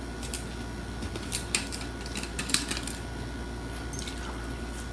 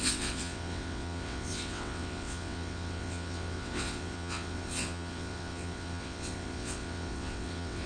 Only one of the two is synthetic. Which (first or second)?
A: second